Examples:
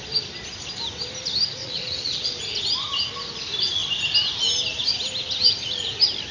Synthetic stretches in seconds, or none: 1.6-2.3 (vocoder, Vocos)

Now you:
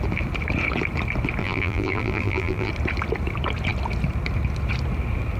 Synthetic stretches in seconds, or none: 1.4-2.7 (vocoder, BigVGAN v2)

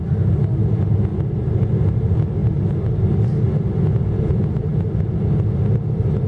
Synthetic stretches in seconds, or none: none